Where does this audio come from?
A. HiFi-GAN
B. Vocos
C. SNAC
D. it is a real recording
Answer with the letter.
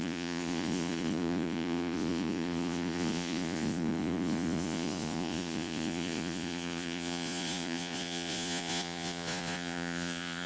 B